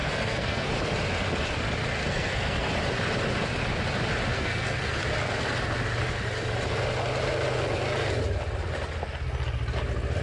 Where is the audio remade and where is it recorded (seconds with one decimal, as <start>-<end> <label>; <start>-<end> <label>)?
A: 0.0-0.7 remade; 0.7-2.0 recorded; 2.0-2.7 remade; 2.7-4.3 recorded; 4.3-5.0 remade; 5.0-10.2 recorded